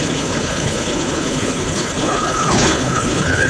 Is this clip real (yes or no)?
no